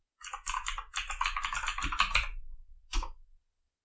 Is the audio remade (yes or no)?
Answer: no